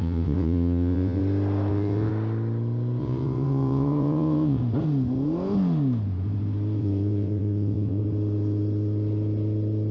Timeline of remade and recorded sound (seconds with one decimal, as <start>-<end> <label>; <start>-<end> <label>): 0.0-1.2 remade; 1.2-1.7 recorded; 1.7-2.1 remade; 2.1-3.0 recorded; 3.0-4.6 remade; 4.6-6.8 recorded; 6.8-8.0 remade; 8.0-9.9 recorded